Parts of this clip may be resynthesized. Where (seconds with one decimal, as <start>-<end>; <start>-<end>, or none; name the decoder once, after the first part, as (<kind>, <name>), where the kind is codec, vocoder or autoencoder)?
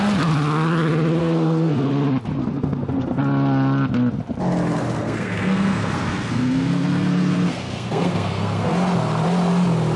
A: 1.2-1.9 (codec, SNAC); 2.4-3.2; 5.0-8.7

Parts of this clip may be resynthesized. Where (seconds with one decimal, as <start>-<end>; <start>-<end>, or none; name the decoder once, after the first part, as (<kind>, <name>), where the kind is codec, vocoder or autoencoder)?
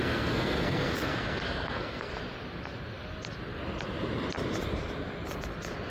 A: 0.0-2.1 (codec, SNAC)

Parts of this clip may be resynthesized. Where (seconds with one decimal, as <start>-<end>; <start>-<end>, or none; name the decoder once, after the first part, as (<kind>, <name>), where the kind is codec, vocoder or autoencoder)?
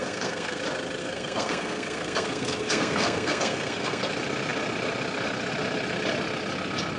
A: 0.0-0.6 (codec, SNAC); 1.0-4.1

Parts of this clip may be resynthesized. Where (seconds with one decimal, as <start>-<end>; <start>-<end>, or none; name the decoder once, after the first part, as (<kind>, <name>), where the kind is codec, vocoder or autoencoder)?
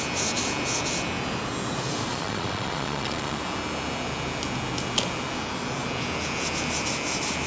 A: 2.1-3.4 (vocoder, Vocos)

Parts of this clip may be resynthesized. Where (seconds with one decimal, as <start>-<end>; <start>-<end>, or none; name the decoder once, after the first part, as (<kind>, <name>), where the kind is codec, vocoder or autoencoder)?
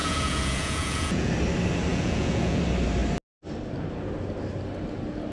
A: 0.0-1.3 (vocoder, Vocos); 1.9-2.6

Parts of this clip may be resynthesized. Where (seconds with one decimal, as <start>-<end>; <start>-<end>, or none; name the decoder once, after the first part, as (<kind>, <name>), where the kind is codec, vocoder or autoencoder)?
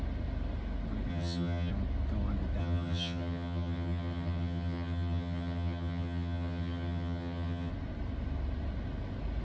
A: 1.1-1.7 (vocoder, HiFi-GAN); 2.6-7.7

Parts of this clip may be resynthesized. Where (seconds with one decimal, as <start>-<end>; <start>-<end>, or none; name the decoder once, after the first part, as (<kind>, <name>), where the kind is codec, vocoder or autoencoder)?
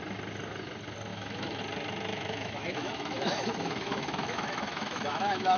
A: 1.1-1.6 (autoencoder, DAC-VAE); 2.1-5.6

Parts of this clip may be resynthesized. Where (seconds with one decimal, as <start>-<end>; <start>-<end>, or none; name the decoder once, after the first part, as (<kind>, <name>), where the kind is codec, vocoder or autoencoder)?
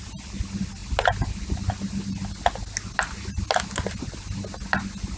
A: none